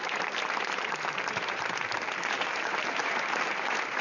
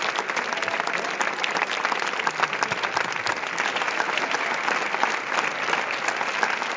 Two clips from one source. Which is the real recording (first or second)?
second